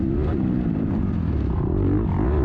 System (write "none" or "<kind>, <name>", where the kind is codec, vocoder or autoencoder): none